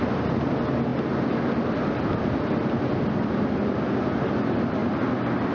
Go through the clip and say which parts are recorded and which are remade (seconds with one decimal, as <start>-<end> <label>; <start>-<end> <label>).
0.0-5.5 recorded